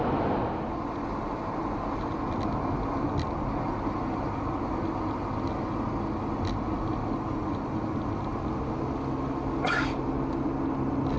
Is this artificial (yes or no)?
no